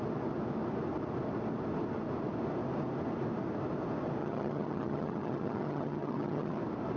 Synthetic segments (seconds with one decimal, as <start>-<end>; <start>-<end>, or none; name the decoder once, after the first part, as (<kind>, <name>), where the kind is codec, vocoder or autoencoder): 4.2-6.6 (vocoder, HiFi-GAN)